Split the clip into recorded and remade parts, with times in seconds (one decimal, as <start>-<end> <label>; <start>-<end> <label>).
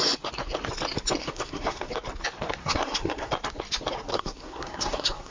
0.0-1.2 recorded; 1.2-1.9 remade; 1.9-2.6 recorded; 2.6-3.3 remade; 3.3-4.1 recorded; 4.1-5.3 remade